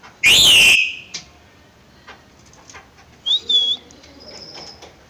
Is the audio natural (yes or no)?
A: yes